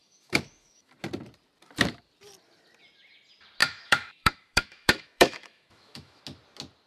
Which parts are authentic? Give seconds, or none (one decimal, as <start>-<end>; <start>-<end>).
0.9-3.6; 6.2-6.9